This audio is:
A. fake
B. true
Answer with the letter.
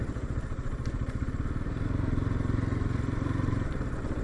A